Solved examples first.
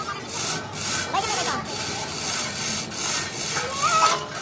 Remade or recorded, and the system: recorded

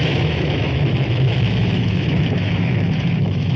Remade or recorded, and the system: remade, autoencoder, DAC-VAE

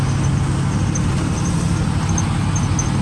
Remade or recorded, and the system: recorded